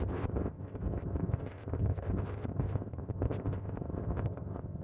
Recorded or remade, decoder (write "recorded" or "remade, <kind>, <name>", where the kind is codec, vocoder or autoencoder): remade, codec, ZipCodec